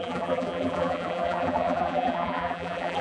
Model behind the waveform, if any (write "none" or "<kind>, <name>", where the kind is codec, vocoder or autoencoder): vocoder, BigVGAN v2